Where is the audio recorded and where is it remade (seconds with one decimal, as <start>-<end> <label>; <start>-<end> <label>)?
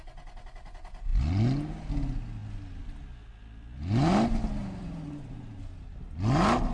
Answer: 0.0-4.6 recorded; 4.6-5.6 remade; 5.6-6.7 recorded